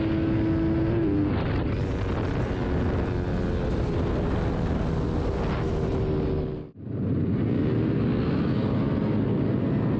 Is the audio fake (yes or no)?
no